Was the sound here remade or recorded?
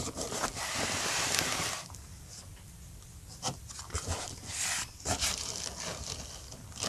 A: recorded